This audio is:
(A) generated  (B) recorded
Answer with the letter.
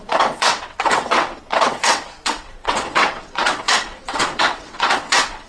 A